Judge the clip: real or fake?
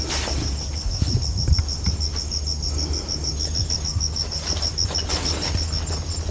real